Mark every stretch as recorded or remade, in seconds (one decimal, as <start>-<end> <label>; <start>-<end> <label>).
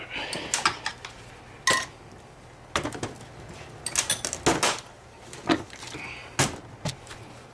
0.0-7.5 recorded